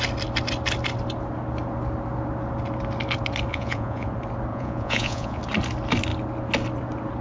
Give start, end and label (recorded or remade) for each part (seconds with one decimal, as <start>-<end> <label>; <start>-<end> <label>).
0.0-3.5 recorded; 3.5-4.1 remade; 4.1-4.5 recorded; 4.5-5.4 remade; 5.4-7.2 recorded